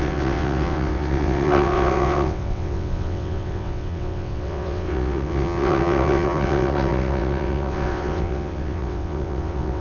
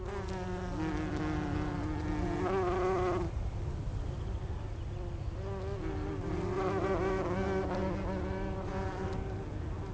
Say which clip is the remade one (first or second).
first